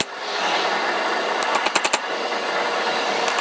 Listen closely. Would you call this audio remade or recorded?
remade